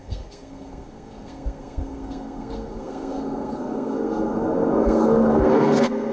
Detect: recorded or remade remade